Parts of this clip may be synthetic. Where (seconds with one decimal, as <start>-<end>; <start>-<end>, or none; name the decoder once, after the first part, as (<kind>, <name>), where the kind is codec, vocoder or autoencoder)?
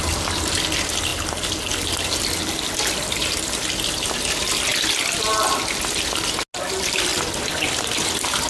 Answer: none